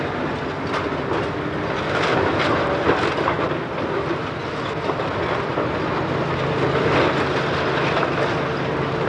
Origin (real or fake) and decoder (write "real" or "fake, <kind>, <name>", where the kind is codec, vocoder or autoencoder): real